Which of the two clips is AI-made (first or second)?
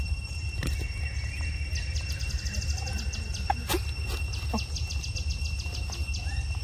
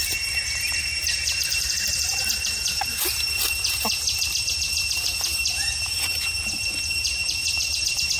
second